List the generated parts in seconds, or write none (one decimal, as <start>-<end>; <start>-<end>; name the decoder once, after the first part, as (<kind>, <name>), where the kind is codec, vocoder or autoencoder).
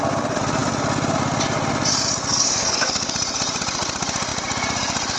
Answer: 2.3-3.1 (codec, DAC)